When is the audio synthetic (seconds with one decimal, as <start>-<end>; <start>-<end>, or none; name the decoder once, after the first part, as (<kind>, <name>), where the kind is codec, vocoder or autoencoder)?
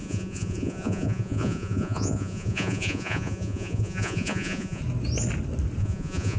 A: 0.0-4.8 (vocoder, Vocos); 5.8-6.4